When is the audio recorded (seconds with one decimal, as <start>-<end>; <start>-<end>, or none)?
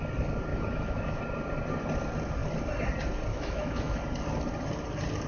0.0-0.5; 1.2-3.3; 4.0-5.3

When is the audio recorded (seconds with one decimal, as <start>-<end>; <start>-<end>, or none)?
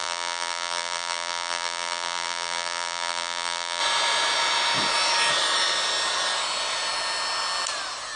3.8-8.2